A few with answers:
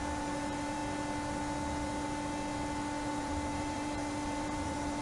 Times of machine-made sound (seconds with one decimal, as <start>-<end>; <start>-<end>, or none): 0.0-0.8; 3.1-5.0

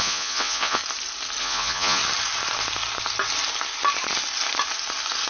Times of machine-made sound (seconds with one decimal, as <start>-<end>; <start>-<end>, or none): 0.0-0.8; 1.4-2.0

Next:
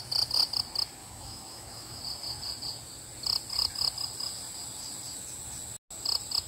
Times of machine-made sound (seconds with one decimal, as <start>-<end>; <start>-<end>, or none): 1.0-2.0

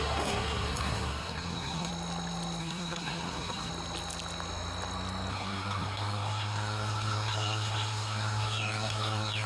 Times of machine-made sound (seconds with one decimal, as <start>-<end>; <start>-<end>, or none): 0.0-1.9; 2.6-3.7; 5.3-9.5

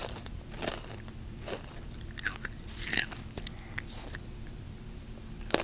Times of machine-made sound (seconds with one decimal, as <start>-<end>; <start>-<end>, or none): 0.0-5.6